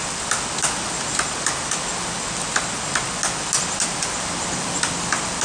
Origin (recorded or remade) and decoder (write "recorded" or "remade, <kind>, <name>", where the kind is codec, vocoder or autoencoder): recorded